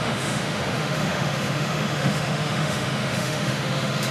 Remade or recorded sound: remade